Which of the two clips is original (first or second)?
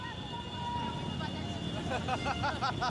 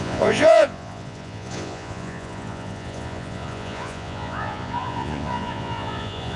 first